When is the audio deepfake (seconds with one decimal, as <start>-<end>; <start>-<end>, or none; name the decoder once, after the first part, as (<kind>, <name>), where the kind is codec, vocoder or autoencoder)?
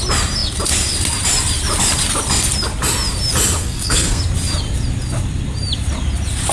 3.6-4.2 (codec, SNAC)